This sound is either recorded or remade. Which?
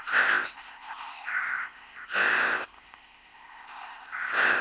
remade